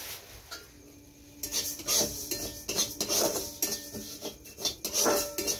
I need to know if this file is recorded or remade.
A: recorded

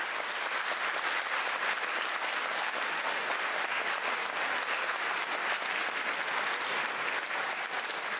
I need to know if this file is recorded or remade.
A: recorded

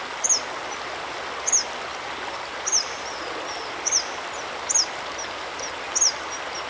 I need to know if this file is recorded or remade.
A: recorded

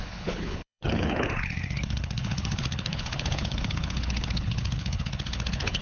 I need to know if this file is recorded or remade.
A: remade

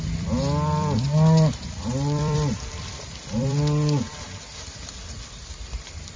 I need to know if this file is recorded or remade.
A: remade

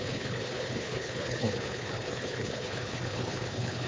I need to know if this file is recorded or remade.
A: remade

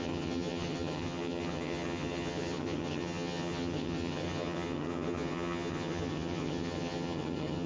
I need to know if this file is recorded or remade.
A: remade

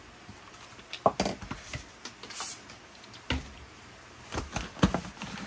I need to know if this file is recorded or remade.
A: recorded